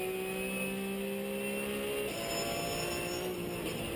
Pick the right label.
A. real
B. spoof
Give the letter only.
A